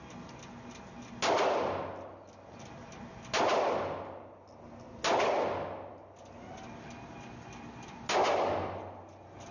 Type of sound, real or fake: real